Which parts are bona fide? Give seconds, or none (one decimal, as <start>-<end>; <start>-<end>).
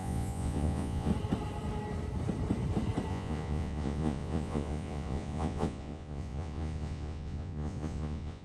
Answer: 1.1-3.1